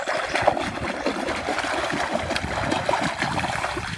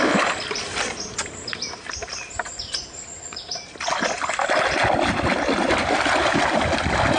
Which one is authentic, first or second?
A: second